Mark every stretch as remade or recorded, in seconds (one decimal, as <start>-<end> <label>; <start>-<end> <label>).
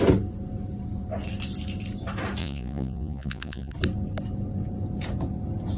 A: 0.0-2.4 recorded; 2.4-3.7 remade; 3.7-5.8 recorded